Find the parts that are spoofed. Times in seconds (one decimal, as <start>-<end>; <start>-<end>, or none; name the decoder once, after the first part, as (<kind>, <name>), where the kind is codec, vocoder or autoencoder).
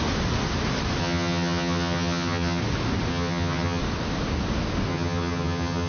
1.0-2.6 (vocoder, HiFi-GAN); 3.1-3.8; 4.9-5.9